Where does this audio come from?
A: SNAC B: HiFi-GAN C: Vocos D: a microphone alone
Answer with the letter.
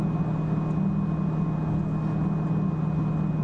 D